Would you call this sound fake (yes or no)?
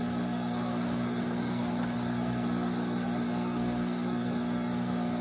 yes